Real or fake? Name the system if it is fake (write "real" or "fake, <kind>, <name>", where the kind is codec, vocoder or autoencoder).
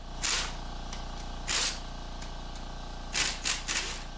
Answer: real